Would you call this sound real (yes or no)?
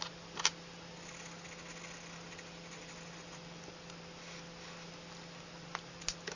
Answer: yes